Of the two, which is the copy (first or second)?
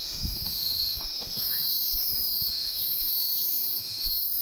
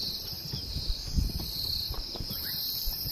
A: first